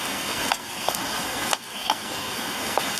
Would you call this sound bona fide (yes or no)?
no